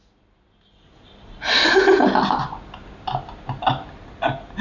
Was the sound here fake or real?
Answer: real